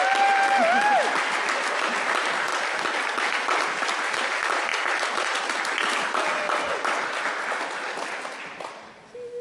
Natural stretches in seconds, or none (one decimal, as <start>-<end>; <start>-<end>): 0.0-2.5; 3.2-9.4